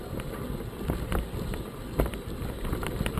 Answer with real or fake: real